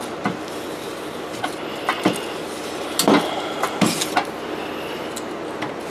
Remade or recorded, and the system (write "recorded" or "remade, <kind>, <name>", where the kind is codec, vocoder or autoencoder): recorded